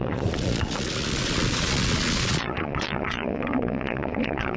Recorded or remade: remade